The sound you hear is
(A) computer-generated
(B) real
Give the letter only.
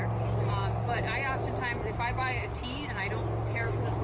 B